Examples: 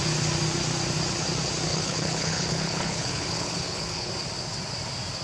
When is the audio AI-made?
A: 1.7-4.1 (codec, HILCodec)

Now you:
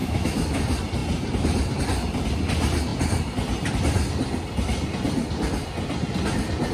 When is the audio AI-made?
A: 0.0-0.6 (autoencoder, DAC-VAE)

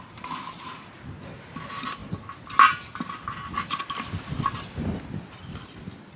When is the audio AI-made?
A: none